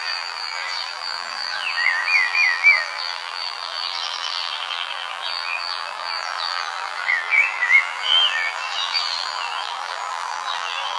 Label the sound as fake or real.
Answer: fake